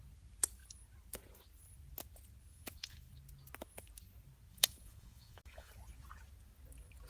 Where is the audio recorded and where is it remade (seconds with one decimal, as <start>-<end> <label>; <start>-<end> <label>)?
0.0-2.5 recorded; 2.5-3.1 remade; 3.1-4.5 recorded; 4.5-5.7 remade; 5.7-7.1 recorded